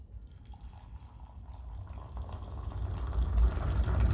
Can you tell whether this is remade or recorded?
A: remade